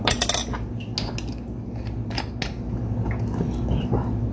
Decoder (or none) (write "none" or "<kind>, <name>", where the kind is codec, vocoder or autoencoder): none